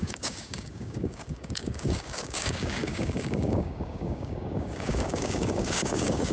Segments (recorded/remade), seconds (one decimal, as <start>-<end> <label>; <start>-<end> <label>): 0.0-6.3 remade